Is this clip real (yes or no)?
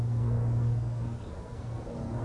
no